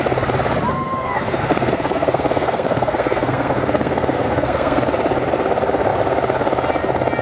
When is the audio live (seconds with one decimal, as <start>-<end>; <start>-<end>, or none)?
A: 0.0-0.7; 4.8-7.2